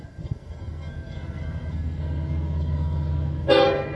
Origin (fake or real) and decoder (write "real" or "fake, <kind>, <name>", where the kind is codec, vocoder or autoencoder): fake, codec, SNAC